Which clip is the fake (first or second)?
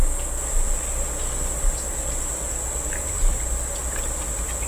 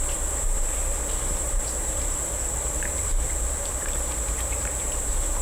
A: second